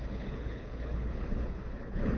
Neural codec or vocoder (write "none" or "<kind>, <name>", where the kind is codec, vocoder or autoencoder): codec, HILCodec